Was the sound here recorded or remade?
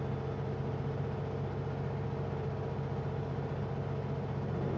recorded